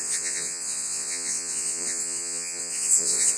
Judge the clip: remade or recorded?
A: remade